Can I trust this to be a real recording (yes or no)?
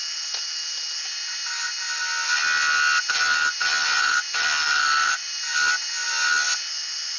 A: yes